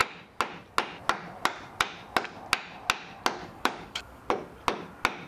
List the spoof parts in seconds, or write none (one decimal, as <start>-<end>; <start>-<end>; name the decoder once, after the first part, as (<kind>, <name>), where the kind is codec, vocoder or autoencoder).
3.4-4.2 (codec, DAC)